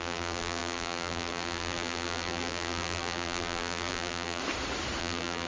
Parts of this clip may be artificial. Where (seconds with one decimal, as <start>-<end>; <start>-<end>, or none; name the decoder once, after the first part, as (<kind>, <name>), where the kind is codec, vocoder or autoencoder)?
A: 0.0-4.4 (vocoder, BigVGAN v2); 5.0-5.5